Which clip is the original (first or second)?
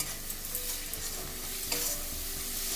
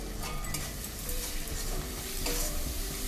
first